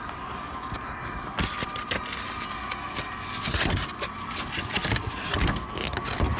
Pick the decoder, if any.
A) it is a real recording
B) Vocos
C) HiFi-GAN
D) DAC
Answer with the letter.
A